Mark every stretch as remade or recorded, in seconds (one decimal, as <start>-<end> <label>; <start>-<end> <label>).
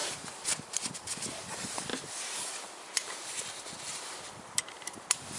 0.0-1.9 remade; 1.9-4.7 recorded; 4.7-5.4 remade